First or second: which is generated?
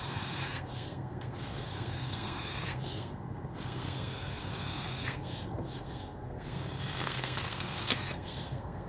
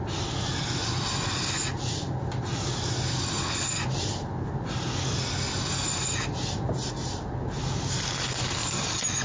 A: first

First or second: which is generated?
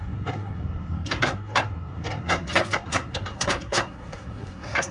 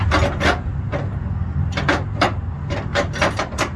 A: first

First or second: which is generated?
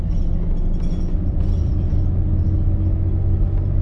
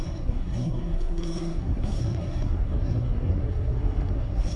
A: second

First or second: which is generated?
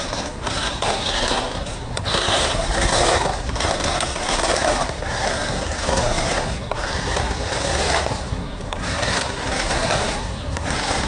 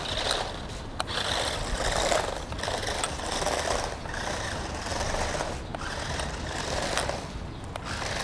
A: first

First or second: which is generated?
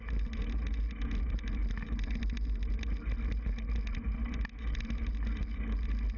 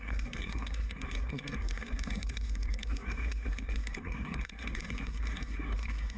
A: second